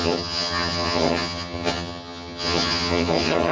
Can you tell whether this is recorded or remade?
remade